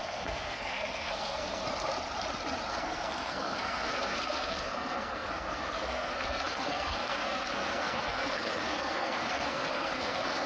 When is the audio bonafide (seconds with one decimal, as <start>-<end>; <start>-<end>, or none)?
1.6-2.7